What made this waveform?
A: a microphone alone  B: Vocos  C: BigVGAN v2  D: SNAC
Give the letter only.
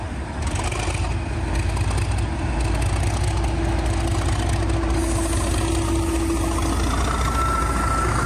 A